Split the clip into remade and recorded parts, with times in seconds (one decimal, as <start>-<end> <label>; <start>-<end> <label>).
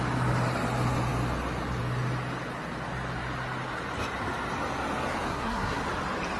0.0-5.3 recorded; 5.3-5.8 remade; 5.8-6.4 recorded